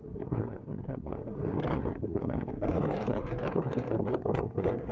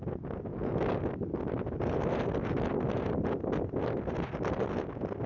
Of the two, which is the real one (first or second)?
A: second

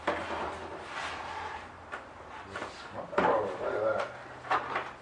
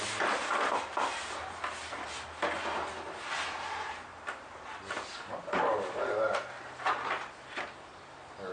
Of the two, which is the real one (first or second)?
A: second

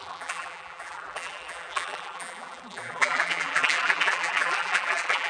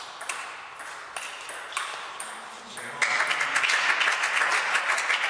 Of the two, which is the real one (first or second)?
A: second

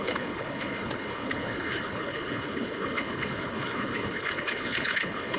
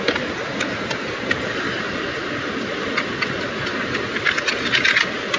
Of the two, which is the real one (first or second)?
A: second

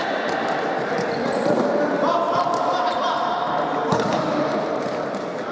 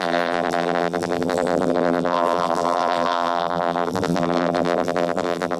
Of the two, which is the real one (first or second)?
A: first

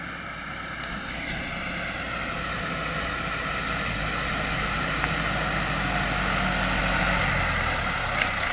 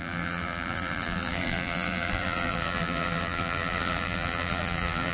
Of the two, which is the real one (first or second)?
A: first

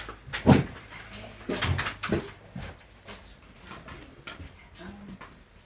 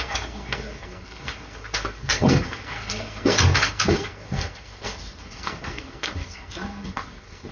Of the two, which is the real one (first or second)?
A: first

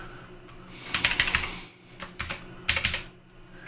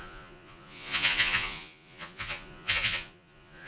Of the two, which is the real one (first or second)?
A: first